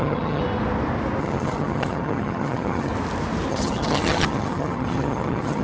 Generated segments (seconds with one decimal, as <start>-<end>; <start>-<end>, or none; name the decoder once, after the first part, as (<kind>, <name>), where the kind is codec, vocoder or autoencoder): 0.0-0.4 (vocoder, HiFi-GAN); 1.2-2.9; 3.5-5.6